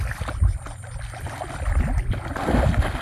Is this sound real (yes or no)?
yes